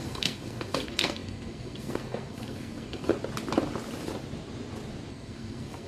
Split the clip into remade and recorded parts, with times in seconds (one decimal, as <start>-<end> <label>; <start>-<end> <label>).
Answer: 0.0-3.1 remade; 3.1-5.1 recorded; 5.1-5.9 remade